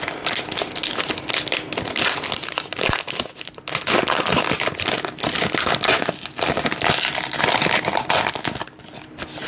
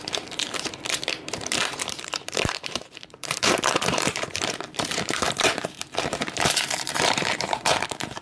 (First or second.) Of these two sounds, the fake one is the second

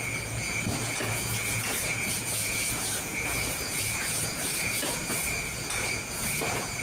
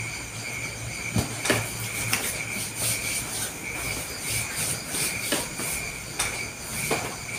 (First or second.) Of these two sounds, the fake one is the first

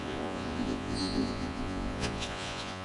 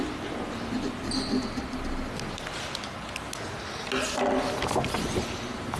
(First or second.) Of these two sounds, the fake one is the first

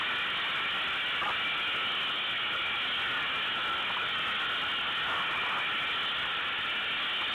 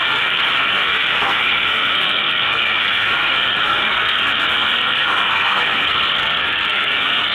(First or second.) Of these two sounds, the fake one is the second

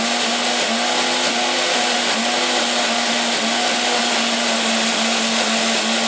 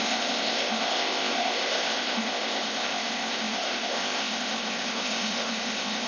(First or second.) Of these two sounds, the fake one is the second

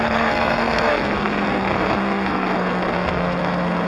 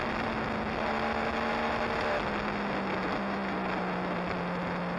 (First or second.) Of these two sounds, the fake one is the first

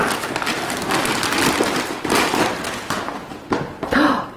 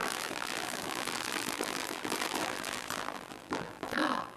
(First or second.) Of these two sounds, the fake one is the second